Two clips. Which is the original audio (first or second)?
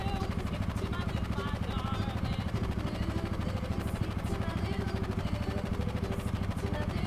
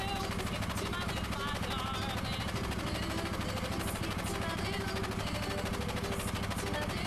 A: second